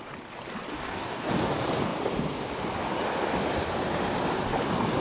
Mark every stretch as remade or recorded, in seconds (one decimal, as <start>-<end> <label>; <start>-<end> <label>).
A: 0.0-0.7 recorded; 0.7-1.3 remade; 1.3-5.0 recorded